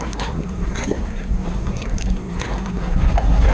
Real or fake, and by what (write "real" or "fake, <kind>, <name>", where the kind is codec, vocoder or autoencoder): fake, codec, SNAC